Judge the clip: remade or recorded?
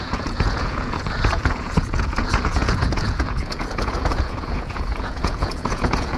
remade